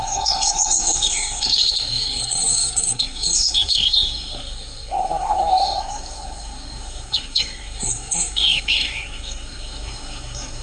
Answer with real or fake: fake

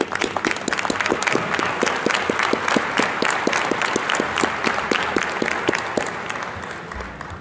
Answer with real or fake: real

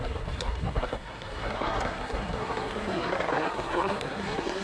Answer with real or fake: fake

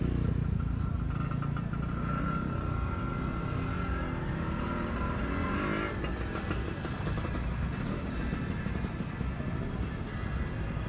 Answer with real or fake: real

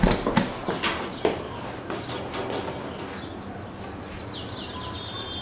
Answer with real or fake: real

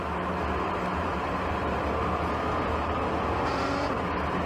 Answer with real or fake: real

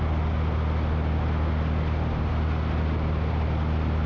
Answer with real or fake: real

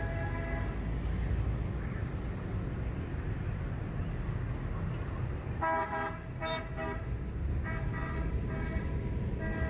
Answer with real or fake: real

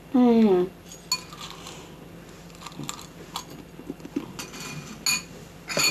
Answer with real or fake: real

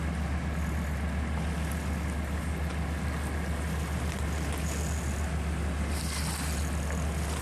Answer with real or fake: real